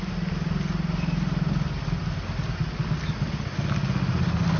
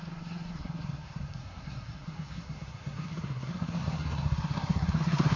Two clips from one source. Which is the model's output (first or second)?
second